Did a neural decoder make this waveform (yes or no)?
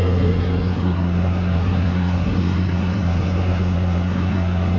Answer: yes